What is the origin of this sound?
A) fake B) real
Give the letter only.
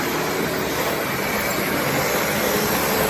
B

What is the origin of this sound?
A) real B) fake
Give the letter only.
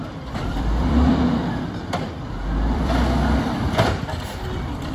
B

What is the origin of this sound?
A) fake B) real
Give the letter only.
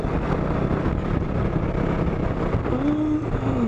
B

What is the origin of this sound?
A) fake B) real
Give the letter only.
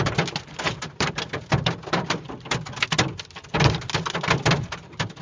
A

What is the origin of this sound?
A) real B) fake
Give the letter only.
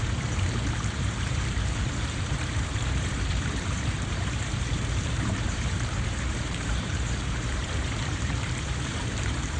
B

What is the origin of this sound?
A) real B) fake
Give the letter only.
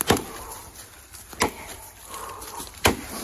A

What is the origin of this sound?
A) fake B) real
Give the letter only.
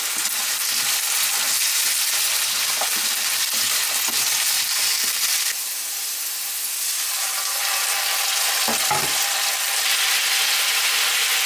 B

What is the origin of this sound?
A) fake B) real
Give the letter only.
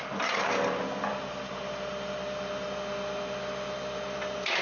B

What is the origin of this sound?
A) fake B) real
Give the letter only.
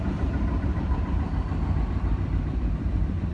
A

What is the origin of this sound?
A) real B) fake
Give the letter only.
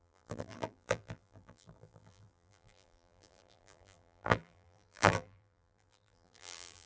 B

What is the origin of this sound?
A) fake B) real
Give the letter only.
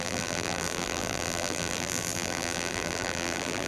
A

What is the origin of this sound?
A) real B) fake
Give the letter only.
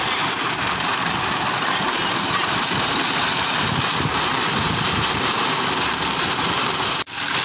B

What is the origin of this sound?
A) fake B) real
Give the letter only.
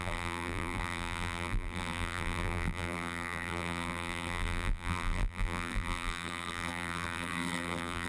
A